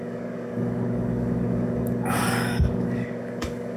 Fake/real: fake